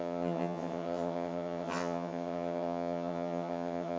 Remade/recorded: remade